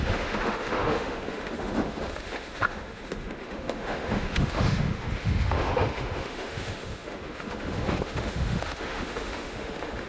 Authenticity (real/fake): fake